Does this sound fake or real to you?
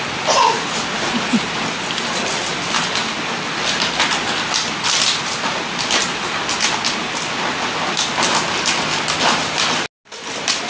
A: real